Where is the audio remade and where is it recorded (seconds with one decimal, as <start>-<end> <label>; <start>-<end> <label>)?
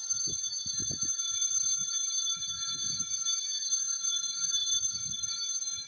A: 0.0-5.9 recorded